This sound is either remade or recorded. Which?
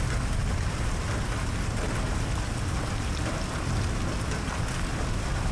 recorded